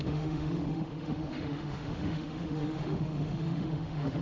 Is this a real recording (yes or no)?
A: no